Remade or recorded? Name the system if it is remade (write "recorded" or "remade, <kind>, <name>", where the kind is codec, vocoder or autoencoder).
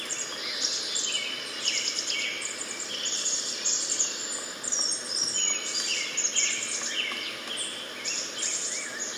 recorded